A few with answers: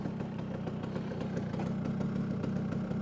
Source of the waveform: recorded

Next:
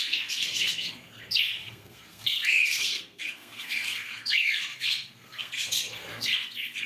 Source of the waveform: remade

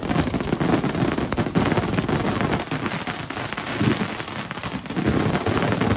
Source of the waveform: recorded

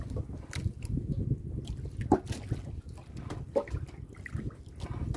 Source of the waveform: recorded